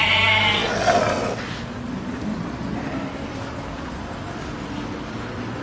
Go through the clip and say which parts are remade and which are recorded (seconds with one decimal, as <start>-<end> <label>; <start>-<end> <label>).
0.0-5.6 recorded